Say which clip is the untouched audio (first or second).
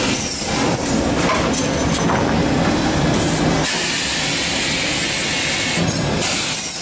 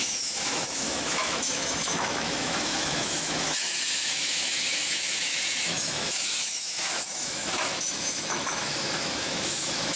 first